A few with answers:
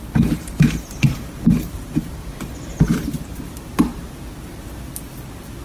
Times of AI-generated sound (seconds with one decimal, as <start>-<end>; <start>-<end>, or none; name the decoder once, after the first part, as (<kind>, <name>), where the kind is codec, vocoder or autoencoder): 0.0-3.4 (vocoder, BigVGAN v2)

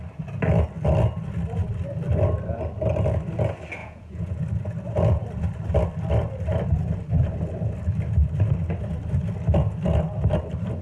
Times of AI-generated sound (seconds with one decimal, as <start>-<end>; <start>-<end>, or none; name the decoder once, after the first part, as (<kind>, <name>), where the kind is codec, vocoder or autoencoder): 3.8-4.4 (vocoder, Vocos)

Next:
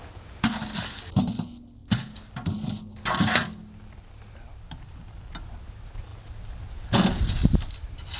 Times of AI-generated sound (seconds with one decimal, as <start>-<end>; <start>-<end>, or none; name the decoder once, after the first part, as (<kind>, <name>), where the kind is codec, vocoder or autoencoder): none

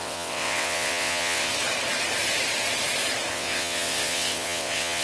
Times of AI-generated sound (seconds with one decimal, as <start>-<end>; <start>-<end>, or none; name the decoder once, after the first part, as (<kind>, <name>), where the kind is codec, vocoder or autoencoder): 0.0-1.5 (vocoder, WaveNeXt); 3.3-5.0

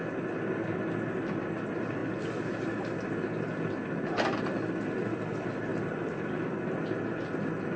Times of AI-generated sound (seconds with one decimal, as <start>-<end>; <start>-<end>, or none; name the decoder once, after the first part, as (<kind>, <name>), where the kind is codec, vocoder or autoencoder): none

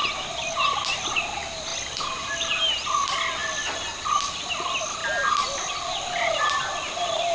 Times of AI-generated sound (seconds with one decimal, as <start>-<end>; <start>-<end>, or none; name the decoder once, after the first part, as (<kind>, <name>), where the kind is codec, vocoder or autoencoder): none